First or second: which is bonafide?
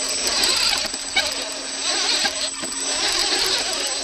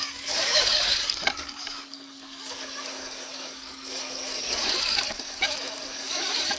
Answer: first